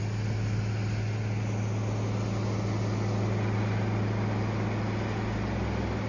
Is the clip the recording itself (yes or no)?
yes